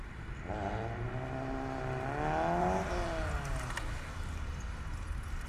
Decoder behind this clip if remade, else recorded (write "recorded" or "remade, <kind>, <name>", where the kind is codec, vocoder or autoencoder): recorded